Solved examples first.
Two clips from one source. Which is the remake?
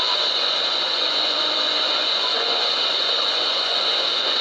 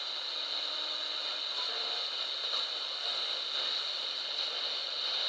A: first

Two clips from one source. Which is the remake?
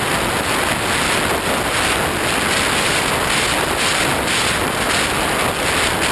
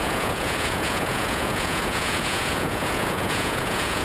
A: second